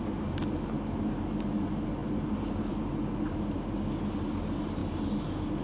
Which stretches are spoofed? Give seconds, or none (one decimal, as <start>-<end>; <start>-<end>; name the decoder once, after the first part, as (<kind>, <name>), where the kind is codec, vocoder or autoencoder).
2.0-3.3 (vocoder, BigVGAN v2)